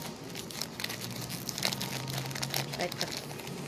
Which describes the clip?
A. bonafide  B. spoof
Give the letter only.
A